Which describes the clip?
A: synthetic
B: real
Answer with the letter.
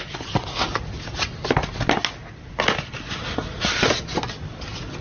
B